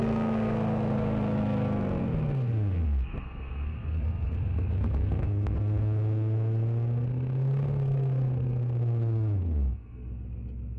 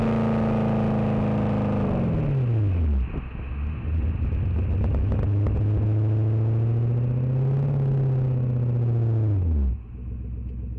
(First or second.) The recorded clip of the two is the second